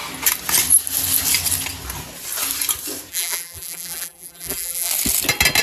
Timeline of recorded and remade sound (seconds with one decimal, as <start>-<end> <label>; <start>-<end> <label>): 0.0-3.1 recorded; 3.1-4.9 remade; 4.9-5.6 recorded